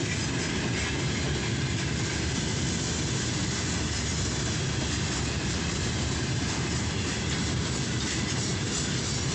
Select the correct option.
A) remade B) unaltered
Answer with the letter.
B